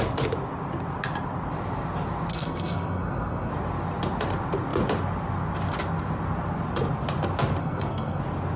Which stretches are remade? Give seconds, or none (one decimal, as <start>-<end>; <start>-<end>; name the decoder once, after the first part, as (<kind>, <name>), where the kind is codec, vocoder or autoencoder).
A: 2.3-3.5 (codec, SNAC); 7.6-8.2